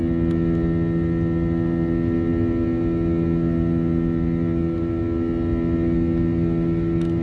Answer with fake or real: real